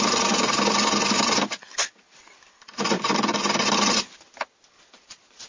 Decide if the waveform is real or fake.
real